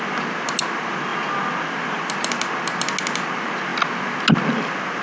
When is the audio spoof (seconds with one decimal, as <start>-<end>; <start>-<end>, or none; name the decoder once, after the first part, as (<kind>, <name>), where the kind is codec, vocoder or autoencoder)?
none